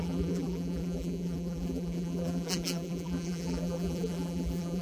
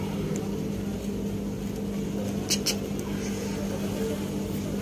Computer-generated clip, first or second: first